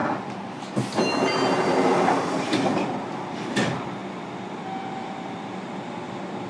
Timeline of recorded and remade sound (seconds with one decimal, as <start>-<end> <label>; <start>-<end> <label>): 0.0-1.1 recorded; 1.1-4.0 remade; 4.0-4.8 recorded; 4.8-6.5 remade